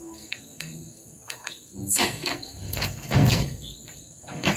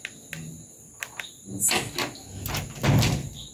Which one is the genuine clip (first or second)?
second